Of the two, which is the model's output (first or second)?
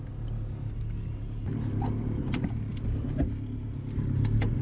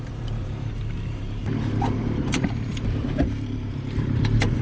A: second